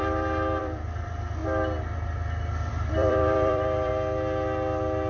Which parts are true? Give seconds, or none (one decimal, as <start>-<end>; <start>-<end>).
1.4-2.7; 3.9-5.1